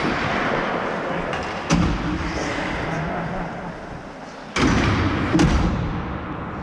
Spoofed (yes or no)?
no